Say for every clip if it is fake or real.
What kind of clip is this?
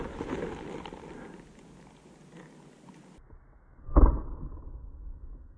real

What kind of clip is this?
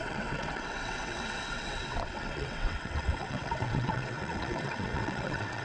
fake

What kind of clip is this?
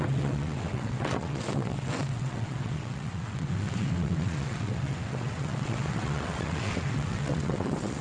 fake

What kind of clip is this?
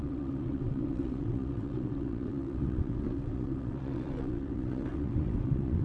fake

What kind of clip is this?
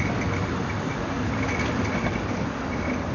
real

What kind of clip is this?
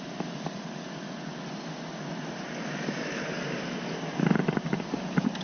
real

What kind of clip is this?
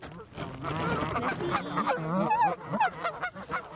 real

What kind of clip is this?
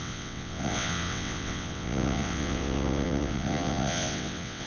fake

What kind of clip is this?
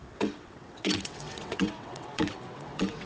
fake